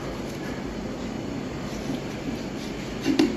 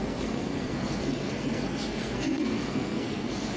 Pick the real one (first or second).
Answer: first